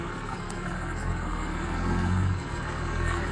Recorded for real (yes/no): no